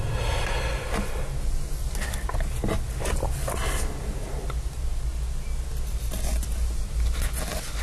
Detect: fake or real real